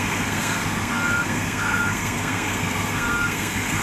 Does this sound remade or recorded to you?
remade